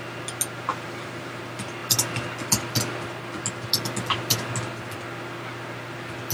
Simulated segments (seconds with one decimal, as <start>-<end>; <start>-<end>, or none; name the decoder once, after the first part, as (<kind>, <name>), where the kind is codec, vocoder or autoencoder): 0.7-1.4 (vocoder, BigVGAN v2)